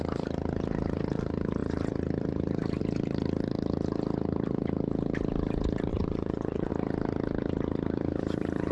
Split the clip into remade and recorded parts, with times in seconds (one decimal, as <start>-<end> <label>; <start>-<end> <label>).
0.0-5.9 recorded; 5.9-6.7 remade; 6.7-8.7 recorded